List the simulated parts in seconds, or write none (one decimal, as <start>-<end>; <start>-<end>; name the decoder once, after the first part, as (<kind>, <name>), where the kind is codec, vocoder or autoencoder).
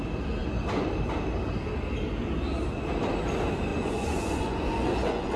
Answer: 3.7-5.4 (vocoder, Vocos)